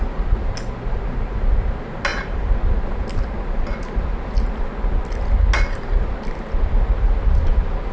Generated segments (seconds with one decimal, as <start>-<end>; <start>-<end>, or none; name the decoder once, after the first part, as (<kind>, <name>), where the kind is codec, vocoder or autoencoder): 2.1-2.6 (vocoder, BigVGAN v2)